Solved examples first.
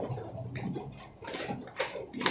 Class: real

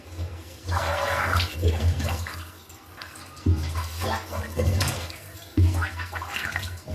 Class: fake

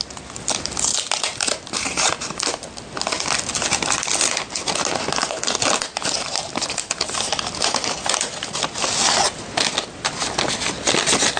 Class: real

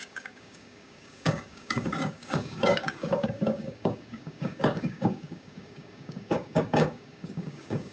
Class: fake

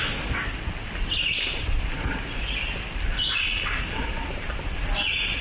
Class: real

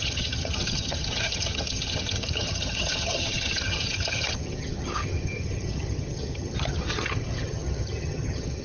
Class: fake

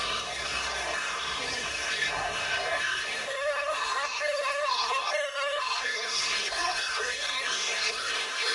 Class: fake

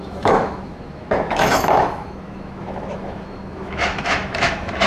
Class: fake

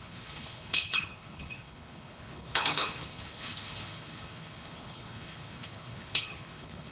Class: fake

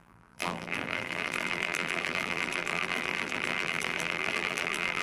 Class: fake